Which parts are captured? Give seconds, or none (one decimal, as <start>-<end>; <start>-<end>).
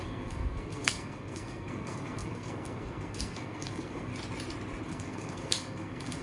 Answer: 4.1-4.8